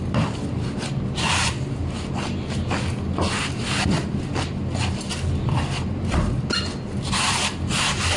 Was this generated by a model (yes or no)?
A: no